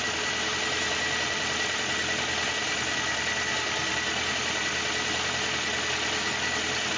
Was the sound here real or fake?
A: real